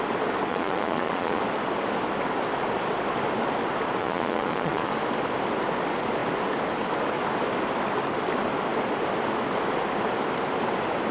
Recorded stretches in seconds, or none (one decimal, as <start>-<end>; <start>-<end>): 0.0-0.5; 1.4-4.0; 4.9-11.1

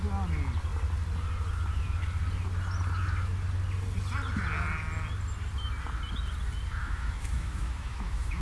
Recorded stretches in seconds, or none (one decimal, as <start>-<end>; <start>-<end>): 0.0-6.8

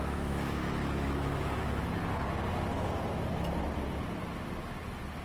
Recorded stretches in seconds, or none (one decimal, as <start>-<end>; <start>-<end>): 2.0-5.2

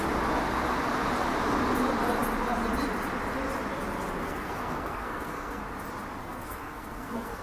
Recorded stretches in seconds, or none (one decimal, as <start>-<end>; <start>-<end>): 0.0-4.2; 5.6-6.2